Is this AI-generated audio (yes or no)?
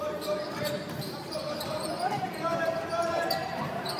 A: yes